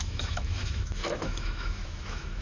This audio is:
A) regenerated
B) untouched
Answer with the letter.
A